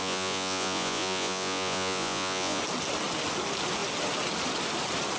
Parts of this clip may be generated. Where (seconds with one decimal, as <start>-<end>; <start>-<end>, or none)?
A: 0.0-2.6

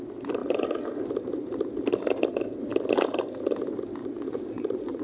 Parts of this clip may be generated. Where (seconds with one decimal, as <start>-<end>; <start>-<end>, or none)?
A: 4.0-5.0

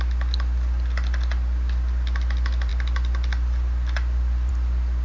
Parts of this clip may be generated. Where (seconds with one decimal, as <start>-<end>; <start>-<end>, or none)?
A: none